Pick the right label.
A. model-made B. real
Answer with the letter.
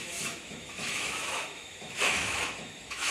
A